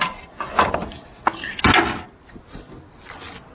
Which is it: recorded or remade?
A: recorded